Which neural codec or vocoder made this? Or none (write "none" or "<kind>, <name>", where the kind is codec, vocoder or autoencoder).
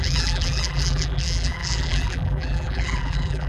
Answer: vocoder, BigVGAN v2